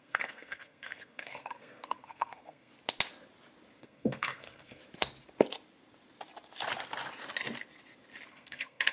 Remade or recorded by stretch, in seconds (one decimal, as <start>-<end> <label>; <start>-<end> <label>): 0.0-2.7 remade; 2.7-3.8 recorded; 3.8-4.8 remade; 4.8-8.3 recorded; 8.3-8.9 remade